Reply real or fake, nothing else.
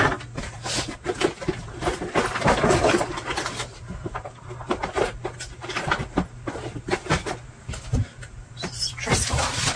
real